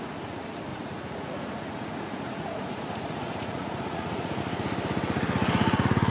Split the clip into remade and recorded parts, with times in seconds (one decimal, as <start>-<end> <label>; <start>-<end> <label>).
0.0-0.7 recorded; 0.7-4.4 remade; 4.4-6.1 recorded